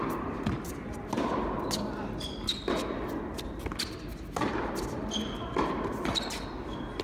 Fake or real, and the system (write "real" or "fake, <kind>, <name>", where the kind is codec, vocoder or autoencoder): real